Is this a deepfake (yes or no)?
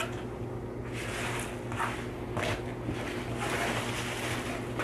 no